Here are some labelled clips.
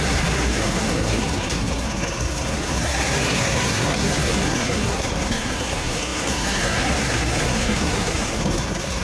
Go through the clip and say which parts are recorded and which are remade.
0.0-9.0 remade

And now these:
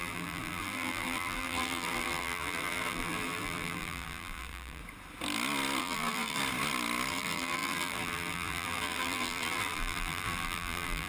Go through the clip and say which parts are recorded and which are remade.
0.0-4.8 remade; 4.8-5.8 recorded; 5.8-6.4 remade; 6.4-7.1 recorded; 7.1-11.1 remade